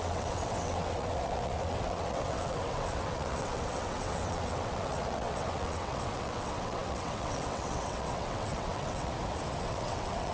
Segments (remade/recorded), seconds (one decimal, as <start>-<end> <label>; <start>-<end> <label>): 0.0-9.1 remade; 9.1-9.6 recorded; 9.6-10.3 remade

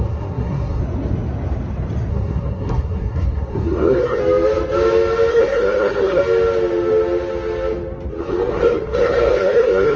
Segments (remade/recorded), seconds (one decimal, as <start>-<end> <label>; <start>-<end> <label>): 0.0-0.8 remade; 0.8-2.1 recorded; 2.1-4.2 remade; 4.2-5.3 recorded; 5.3-6.2 remade; 6.2-8.2 recorded; 8.2-10.0 remade